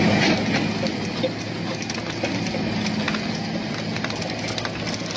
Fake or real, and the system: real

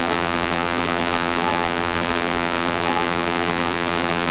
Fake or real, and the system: fake, vocoder, BigVGAN v2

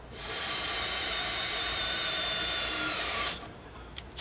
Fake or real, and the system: fake, vocoder, BigVGAN v2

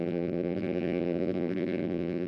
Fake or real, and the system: fake, vocoder, BigVGAN v2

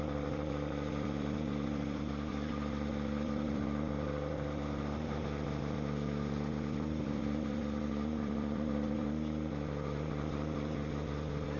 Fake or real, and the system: fake, vocoder, BigVGAN v2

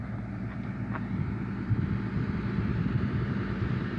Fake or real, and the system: fake, vocoder, BigVGAN v2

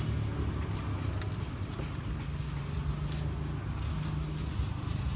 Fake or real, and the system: real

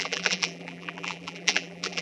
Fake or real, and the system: fake, vocoder, BigVGAN v2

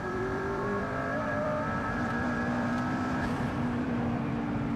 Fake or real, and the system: fake, vocoder, BigVGAN v2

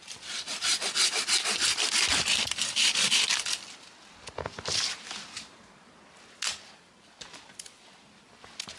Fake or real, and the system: fake, vocoder, BigVGAN v2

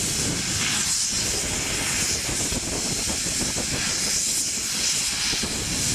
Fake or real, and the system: real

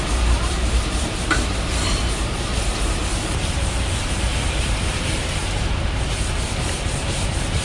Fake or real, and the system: fake, vocoder, BigVGAN v2